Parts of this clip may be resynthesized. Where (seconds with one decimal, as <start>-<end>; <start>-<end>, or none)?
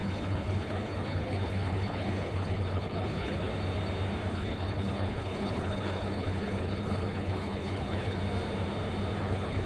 0.0-3.5; 4.3-8.2; 9.2-9.7